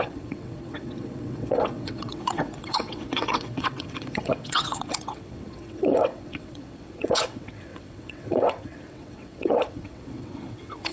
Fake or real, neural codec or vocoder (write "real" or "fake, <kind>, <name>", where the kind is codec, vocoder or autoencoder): fake, vocoder, WaveNeXt